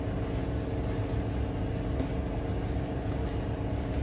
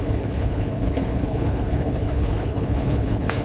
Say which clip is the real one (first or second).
first